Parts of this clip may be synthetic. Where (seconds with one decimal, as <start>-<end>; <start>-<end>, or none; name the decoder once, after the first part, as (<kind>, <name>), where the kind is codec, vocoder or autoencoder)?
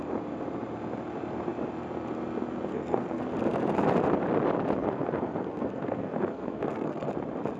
2.7-3.2 (codec, SNAC); 4.8-7.1